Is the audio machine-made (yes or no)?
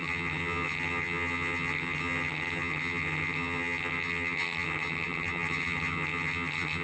yes